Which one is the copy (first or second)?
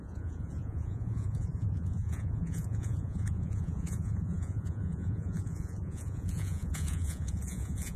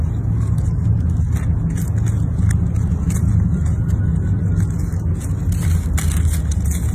first